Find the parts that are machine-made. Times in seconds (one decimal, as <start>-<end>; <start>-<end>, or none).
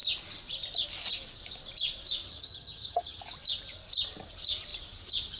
2.2-3.2